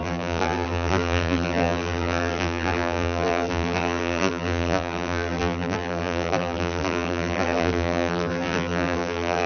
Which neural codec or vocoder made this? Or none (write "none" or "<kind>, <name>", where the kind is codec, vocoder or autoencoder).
vocoder, BigVGAN v2